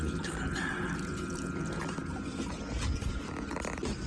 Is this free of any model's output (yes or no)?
yes